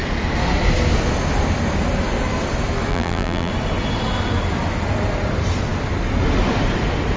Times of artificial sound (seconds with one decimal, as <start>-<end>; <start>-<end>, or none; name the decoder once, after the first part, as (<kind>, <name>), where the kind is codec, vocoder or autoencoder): 2.9-3.5 (vocoder, BigVGAN v2)